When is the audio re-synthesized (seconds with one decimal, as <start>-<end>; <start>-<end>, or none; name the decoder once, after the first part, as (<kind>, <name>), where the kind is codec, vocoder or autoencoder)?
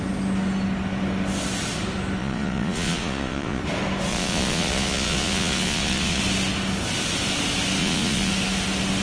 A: 2.2-3.6 (vocoder, Vocos); 4.1-6.2; 7.8-8.3